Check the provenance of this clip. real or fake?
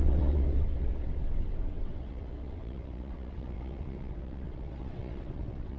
fake